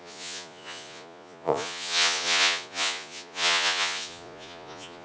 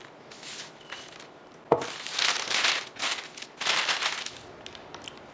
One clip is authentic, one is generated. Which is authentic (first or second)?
second